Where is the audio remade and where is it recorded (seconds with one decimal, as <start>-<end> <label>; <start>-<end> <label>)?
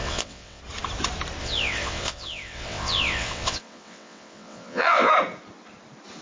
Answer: 0.0-0.6 remade; 0.6-1.4 recorded; 1.4-5.1 remade; 5.1-6.2 recorded